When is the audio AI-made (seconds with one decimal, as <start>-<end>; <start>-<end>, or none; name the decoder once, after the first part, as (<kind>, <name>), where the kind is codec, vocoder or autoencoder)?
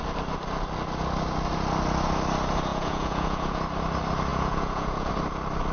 2.7-3.6 (vocoder, Vocos); 4.3-5.1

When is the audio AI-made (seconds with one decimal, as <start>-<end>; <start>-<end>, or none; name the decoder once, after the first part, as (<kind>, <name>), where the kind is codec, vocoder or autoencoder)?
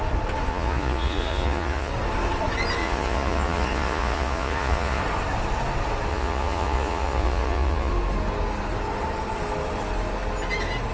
0.5-1.9 (vocoder, Vocos); 2.8-5.0; 6.1-7.9